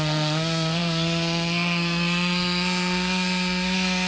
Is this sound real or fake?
fake